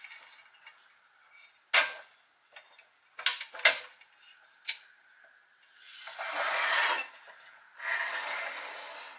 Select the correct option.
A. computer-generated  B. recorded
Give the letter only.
B